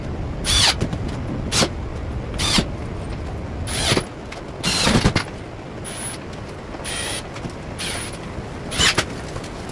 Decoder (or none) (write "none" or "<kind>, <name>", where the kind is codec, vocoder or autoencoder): none